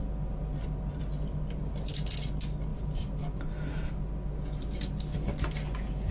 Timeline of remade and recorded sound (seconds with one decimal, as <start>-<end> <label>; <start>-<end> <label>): 0.0-2.7 recorded; 2.7-3.9 remade; 3.9-6.1 recorded